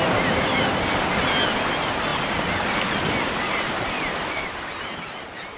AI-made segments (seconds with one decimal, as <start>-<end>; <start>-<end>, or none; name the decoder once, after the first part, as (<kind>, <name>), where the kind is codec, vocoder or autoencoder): none